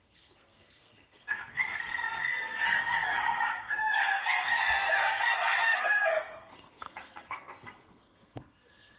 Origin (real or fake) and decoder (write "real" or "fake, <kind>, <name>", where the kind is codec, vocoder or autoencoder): fake, codec, SNAC